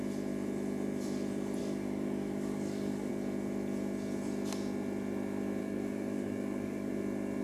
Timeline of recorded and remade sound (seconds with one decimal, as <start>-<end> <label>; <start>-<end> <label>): 0.0-1.6 recorded; 1.6-3.1 remade; 3.1-5.6 recorded; 5.6-6.9 remade; 6.9-7.4 recorded